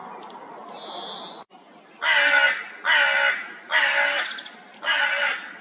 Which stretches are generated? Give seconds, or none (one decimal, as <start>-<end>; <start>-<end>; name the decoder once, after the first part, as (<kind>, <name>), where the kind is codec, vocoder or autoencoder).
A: none